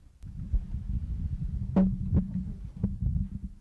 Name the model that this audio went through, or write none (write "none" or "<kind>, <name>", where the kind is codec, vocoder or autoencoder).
none